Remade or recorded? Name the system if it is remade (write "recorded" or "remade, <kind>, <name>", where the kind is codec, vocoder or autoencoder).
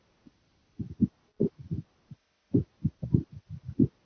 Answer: recorded